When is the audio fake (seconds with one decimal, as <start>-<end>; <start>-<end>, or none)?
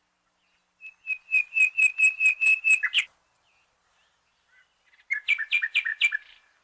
none